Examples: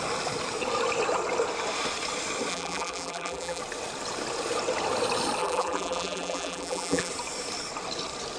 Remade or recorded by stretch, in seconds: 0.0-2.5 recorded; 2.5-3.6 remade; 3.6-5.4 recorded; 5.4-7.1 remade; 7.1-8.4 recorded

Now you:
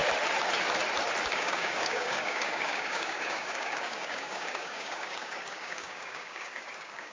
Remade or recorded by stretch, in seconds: 0.0-1.3 recorded; 1.3-7.1 remade

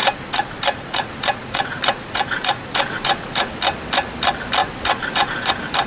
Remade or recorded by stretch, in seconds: 0.0-3.5 remade; 3.5-4.6 recorded; 4.6-5.5 remade; 5.5-5.9 recorded

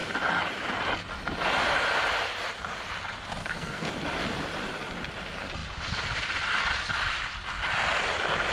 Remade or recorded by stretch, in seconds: 0.0-3.4 recorded; 3.4-3.9 remade; 3.9-8.5 recorded

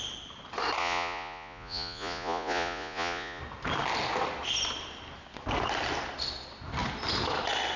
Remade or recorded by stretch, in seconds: 0.0-0.8 recorded; 0.8-3.4 remade; 3.4-7.8 recorded

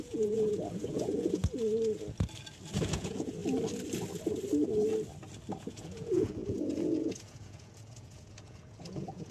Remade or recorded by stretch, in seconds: 0.0-1.4 remade; 1.4-2.9 recorded; 2.9-3.4 remade; 3.4-5.6 recorded; 5.6-9.3 remade

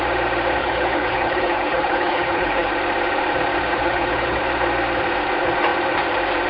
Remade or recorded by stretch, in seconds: 0.0-0.6 recorded; 0.6-2.7 remade; 2.7-3.7 recorded; 3.7-4.4 remade; 4.4-6.5 recorded